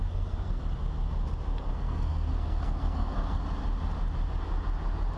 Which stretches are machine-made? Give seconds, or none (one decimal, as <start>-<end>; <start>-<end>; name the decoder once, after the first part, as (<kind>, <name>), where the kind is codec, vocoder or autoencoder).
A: 0.0-0.6 (codec, SNAC); 1.7-3.4